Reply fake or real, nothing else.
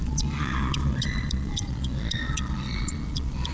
fake